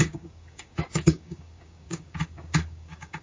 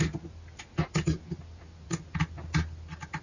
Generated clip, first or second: first